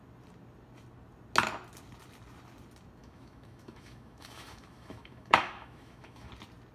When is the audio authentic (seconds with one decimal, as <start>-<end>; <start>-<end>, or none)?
0.0-3.0; 6.3-6.7

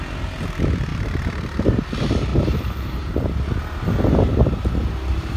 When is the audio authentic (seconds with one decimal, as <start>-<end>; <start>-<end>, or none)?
0.0-0.9; 1.8-2.3; 3.1-4.3; 4.8-5.4

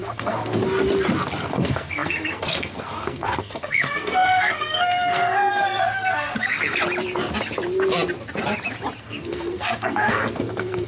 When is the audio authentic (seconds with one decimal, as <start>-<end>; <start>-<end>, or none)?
0.6-1.4; 6.8-9.0

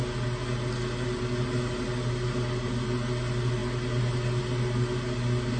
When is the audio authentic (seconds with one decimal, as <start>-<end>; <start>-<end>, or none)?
0.0-5.6

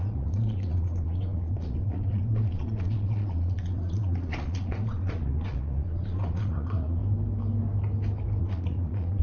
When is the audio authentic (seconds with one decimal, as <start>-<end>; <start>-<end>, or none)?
7.0-8.4

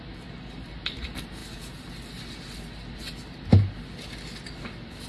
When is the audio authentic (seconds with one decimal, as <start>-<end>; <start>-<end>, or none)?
0.0-5.1

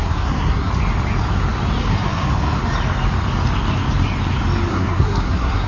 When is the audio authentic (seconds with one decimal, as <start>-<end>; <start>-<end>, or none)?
0.7-1.9; 2.6-4.7

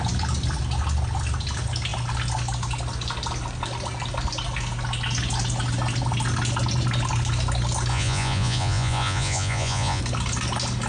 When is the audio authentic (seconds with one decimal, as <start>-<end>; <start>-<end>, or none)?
0.0-7.9; 10.0-10.9